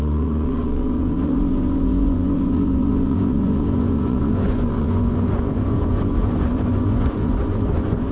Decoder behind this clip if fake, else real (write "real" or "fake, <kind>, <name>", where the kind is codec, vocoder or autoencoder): fake, vocoder, Vocos